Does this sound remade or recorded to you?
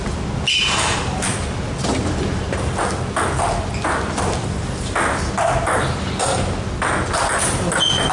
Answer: recorded